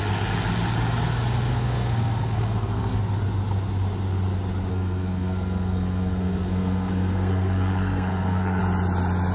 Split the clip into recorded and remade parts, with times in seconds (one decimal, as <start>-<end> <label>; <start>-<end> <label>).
0.0-1.5 recorded; 1.5-3.0 remade; 3.0-4.7 recorded; 4.7-8.6 remade; 8.6-9.3 recorded